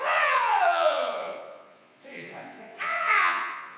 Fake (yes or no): yes